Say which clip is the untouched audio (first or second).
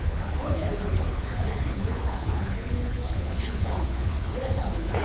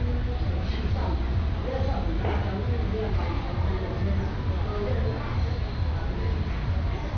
second